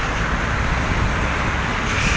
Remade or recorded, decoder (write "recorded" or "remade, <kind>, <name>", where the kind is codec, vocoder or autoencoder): recorded